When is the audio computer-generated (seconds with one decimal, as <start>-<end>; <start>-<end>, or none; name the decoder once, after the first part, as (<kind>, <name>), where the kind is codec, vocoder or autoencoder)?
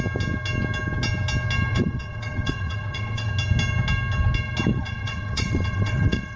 1.7-3.3 (vocoder, WaveNeXt); 4.7-6.4